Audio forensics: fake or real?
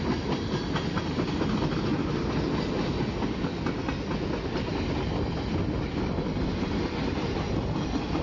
real